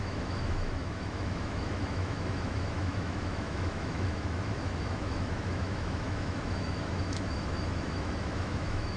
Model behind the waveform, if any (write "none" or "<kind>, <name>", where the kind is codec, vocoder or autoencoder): autoencoder, DAC-VAE